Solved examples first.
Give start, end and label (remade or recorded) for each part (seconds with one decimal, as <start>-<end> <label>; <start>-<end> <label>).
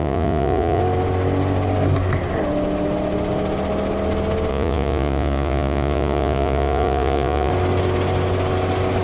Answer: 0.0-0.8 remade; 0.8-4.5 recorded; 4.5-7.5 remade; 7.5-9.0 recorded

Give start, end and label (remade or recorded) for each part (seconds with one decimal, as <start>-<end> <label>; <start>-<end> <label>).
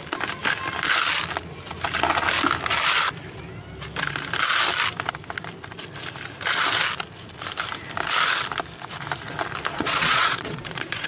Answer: 0.0-9.7 recorded; 9.7-11.1 remade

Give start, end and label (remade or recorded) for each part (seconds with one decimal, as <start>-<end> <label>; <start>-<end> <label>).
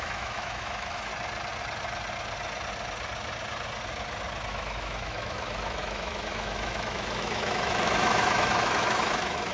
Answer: 0.0-1.1 remade; 1.1-4.5 recorded; 4.5-9.5 remade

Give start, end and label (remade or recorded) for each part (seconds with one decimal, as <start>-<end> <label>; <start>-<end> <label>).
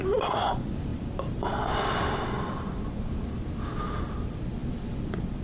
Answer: 0.0-0.9 recorded; 0.9-1.6 remade; 1.6-4.6 recorded; 4.6-5.4 remade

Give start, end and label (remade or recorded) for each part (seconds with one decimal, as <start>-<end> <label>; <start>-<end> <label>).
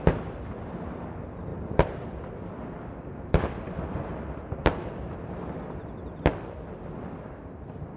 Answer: 0.0-1.5 recorded; 1.5-6.3 remade; 6.3-8.0 recorded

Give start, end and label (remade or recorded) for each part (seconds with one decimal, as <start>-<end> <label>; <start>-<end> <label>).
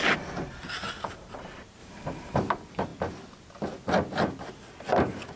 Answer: 0.0-0.6 recorded; 0.6-1.4 remade; 1.4-1.8 recorded; 1.8-2.5 remade; 2.5-5.4 recorded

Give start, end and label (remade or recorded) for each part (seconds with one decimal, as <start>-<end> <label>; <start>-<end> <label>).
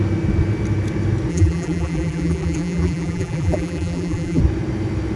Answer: 0.0-1.3 recorded; 1.3-4.4 remade; 4.4-5.2 recorded